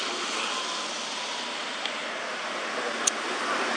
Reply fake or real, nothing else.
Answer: real